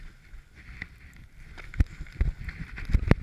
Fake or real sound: real